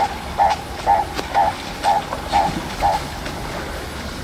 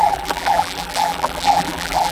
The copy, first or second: second